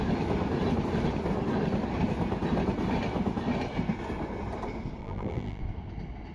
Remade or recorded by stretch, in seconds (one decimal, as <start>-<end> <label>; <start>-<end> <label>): 0.0-5.0 recorded; 5.0-5.6 remade; 5.6-6.3 recorded